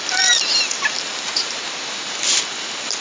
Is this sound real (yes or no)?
yes